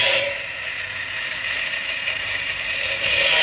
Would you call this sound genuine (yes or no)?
no